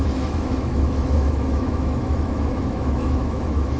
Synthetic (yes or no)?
yes